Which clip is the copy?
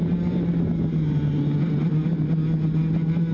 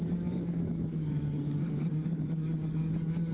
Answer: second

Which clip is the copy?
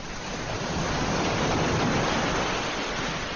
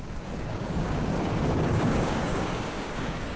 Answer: second